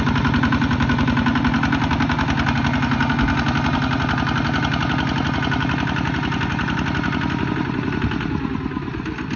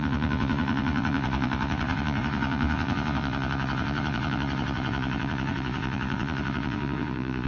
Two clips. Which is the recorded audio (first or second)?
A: first